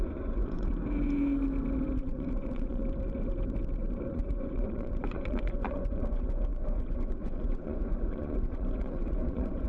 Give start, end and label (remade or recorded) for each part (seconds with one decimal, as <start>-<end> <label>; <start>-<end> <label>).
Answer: 0.0-0.7 remade; 0.7-2.0 recorded; 2.0-2.8 remade; 2.8-4.1 recorded; 4.1-9.7 remade